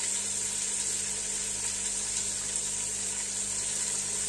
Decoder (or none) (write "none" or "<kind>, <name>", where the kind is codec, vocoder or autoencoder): none